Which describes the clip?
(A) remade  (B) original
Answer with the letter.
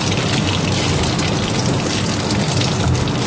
B